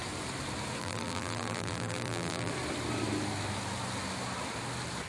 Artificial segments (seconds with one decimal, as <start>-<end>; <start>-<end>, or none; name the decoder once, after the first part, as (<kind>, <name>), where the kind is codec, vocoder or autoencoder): 0.8-2.5 (vocoder, BigVGAN v2)